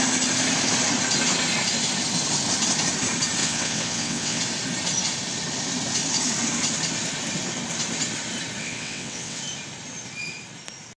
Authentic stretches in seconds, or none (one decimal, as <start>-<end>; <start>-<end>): 0.0-3.4; 4.4-8.6; 9.4-11.0